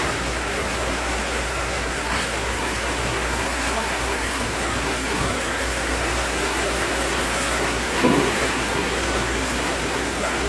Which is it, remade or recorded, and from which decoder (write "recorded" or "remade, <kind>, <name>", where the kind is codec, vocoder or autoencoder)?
remade, codec, SNAC